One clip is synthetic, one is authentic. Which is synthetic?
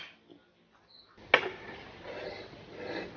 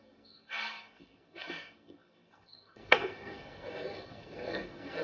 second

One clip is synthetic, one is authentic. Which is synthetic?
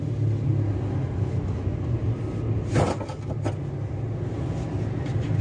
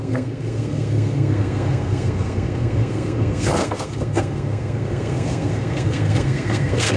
second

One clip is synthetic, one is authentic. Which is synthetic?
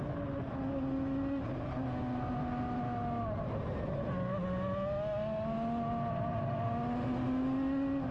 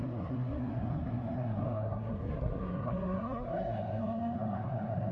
second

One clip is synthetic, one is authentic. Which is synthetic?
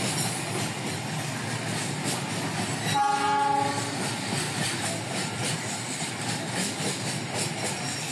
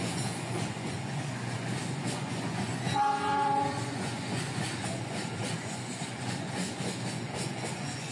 second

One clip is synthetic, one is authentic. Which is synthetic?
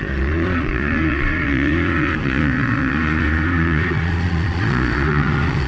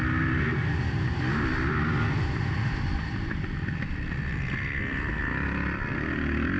first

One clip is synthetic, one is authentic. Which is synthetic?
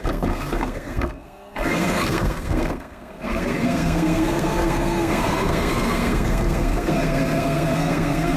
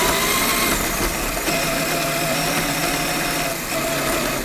first